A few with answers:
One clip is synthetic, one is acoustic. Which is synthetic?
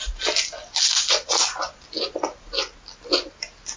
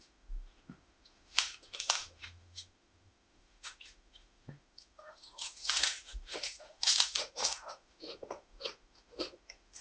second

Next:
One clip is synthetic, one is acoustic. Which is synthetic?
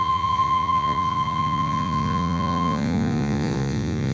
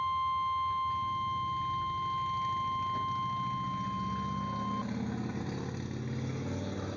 first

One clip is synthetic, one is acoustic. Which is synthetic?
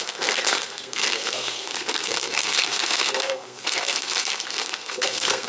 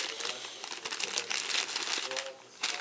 first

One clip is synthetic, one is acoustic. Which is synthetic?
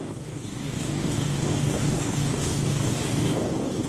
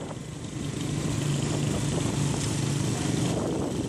first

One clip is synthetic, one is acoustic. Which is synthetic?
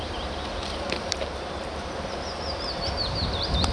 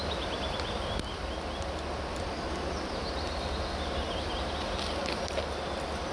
first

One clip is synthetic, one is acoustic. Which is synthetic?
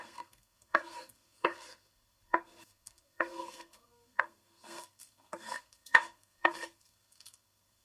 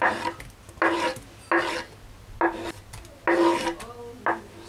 first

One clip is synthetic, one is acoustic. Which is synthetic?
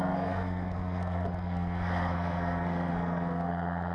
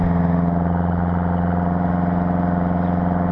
first